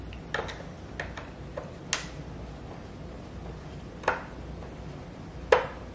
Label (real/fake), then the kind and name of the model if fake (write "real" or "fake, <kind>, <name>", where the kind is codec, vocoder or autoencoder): real